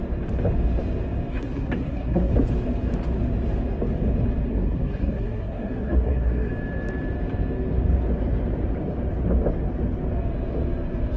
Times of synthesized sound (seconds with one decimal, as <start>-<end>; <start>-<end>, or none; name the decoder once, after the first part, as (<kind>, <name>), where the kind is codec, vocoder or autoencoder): 1.3-2.3 (codec, SNAC); 4.5-6.5